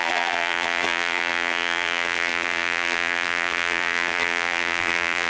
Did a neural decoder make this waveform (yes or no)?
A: yes